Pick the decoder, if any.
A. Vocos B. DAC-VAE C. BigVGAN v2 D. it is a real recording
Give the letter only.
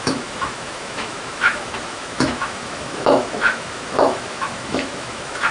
B